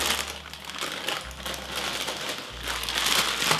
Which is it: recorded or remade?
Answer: recorded